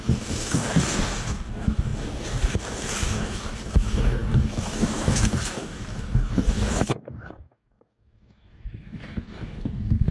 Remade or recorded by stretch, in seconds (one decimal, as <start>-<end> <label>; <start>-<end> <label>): 0.0-10.1 remade